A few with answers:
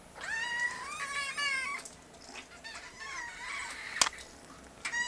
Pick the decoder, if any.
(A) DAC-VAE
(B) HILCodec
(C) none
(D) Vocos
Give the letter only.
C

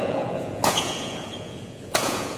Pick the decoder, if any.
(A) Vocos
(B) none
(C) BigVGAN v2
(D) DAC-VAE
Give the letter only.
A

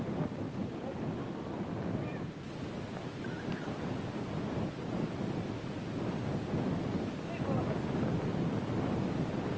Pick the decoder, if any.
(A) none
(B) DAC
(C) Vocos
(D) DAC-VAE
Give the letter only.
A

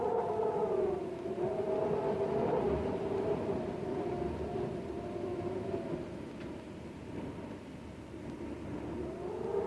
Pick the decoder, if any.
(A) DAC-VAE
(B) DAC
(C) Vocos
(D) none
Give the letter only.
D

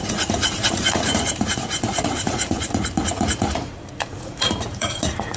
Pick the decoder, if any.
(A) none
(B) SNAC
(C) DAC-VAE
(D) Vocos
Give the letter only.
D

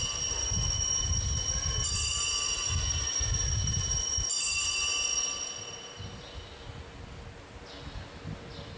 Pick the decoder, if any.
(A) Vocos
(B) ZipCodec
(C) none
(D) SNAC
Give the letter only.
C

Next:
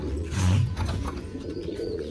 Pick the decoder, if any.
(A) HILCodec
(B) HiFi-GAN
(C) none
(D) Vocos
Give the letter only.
D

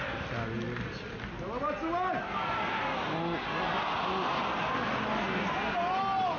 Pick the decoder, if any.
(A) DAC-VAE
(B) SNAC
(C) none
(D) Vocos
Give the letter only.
C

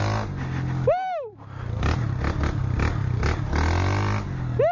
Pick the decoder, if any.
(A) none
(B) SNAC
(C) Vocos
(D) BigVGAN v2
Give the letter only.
A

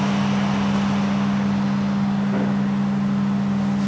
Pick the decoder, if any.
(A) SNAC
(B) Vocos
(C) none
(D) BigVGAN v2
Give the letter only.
C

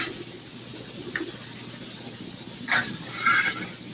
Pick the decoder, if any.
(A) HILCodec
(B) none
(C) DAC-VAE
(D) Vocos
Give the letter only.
B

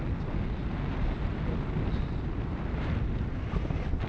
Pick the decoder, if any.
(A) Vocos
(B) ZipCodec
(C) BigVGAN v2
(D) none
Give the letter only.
D